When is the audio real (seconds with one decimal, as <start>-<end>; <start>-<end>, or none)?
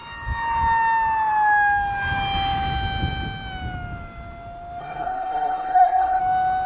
0.0-4.8; 6.2-6.7